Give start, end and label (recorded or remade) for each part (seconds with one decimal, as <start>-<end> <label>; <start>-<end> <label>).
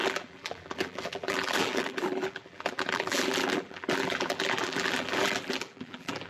0.0-6.3 remade